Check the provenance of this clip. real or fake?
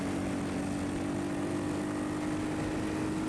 real